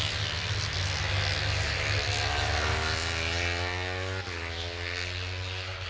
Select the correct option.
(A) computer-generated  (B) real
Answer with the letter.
B